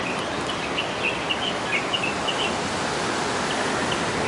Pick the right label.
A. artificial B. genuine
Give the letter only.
B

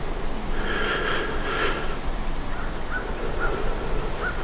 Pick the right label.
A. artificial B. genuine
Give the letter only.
B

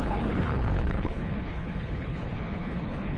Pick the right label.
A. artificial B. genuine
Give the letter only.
A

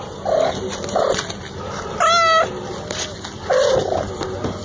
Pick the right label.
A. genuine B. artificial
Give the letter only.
A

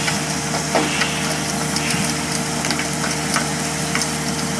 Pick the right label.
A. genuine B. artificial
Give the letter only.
A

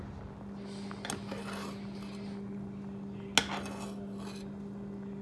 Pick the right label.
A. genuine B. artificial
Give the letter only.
A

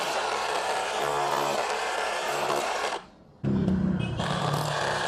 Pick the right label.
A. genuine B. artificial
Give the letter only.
A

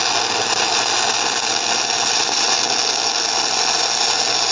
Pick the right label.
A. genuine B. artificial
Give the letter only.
A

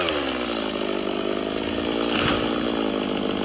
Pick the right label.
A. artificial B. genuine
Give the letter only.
B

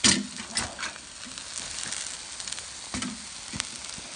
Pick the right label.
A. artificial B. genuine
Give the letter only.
B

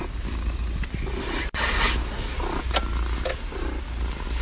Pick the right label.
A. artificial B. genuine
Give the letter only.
B